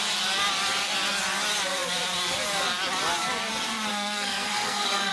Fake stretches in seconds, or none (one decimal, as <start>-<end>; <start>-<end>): 3.9-5.1